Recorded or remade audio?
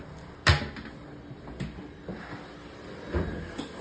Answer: recorded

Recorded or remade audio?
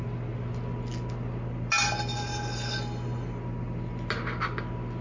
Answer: recorded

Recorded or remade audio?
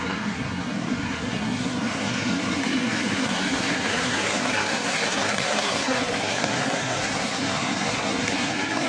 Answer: remade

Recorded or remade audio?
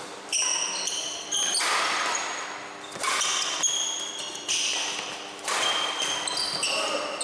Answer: recorded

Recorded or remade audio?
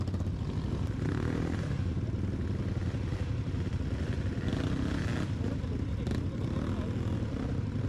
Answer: recorded